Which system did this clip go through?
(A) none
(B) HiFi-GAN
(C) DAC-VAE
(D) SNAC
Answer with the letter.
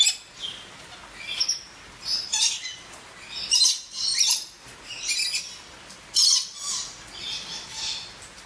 A